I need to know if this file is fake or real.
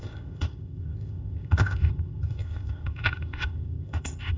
fake